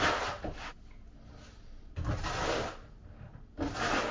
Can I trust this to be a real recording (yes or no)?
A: yes